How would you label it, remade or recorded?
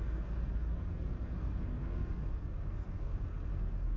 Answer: remade